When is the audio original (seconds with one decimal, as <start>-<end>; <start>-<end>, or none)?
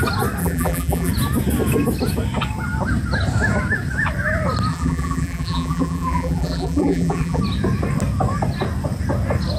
0.0-0.4; 1.1-4.7; 7.4-9.6